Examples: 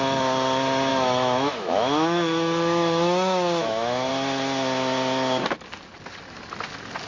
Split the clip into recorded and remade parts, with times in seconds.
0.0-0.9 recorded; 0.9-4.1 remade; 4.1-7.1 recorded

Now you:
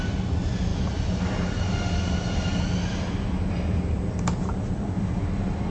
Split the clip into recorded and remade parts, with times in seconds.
0.0-5.7 recorded

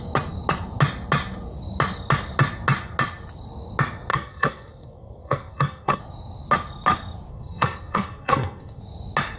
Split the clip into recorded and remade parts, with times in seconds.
0.0-4.1 recorded; 4.1-6.0 remade; 6.0-7.3 recorded; 7.3-8.8 remade; 8.8-9.4 recorded